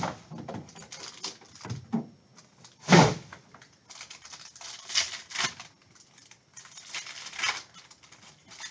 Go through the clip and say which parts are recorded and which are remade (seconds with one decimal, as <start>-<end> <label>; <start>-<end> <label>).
0.0-8.7 recorded